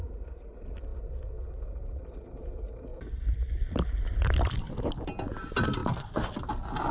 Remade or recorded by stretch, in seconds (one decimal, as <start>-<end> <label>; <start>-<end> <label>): 0.0-2.9 recorded; 2.9-4.7 remade; 4.7-5.8 recorded; 5.8-6.5 remade; 6.5-6.9 recorded